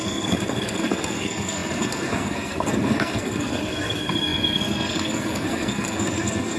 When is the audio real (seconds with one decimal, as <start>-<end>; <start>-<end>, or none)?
none